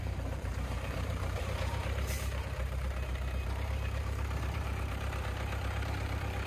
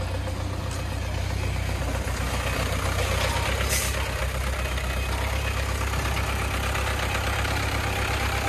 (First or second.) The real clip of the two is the second